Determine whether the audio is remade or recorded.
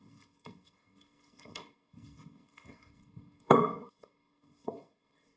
remade